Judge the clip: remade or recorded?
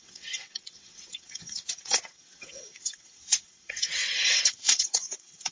remade